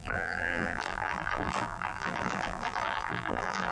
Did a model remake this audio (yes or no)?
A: yes